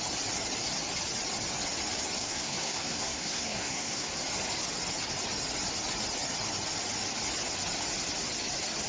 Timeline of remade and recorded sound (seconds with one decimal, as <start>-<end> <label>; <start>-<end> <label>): 0.0-2.2 recorded; 2.2-4.1 remade; 4.1-8.9 recorded